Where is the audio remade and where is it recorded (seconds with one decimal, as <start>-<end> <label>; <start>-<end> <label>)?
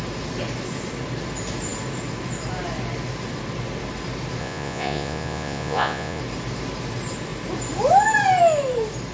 0.0-4.4 recorded; 4.4-6.2 remade; 6.2-9.1 recorded